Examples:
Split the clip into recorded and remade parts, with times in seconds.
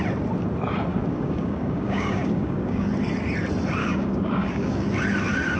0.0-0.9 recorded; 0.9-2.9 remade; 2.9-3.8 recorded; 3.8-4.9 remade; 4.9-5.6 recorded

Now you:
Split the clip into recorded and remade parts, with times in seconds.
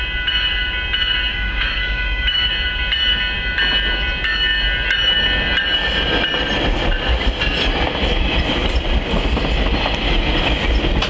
0.0-1.3 recorded; 1.3-2.5 remade; 2.5-11.1 recorded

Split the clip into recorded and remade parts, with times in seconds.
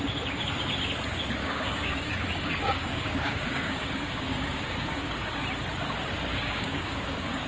0.0-1.4 recorded; 1.4-5.4 remade; 5.4-6.3 recorded; 6.3-7.5 remade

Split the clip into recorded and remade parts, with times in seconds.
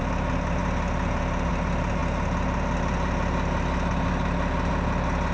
0.0-5.3 recorded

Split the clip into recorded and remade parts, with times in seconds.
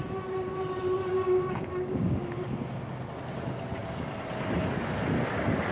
0.0-1.1 recorded; 1.1-2.5 remade; 2.5-5.7 recorded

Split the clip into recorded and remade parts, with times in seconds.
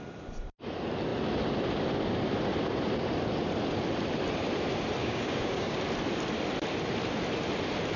0.0-5.0 recorded; 5.0-5.8 remade; 5.8-8.0 recorded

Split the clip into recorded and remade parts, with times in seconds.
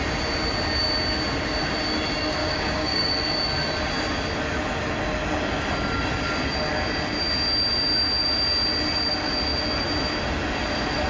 0.0-2.4 recorded; 2.4-3.1 remade; 3.1-11.1 recorded